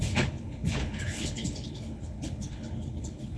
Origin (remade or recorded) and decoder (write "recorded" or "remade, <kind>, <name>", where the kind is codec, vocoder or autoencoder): remade, codec, HILCodec